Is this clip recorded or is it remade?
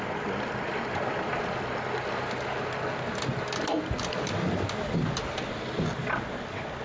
recorded